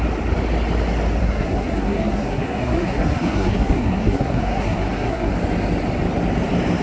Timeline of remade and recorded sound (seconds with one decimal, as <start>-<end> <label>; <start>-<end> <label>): 0.0-1.2 recorded; 1.2-5.3 remade; 5.3-6.8 recorded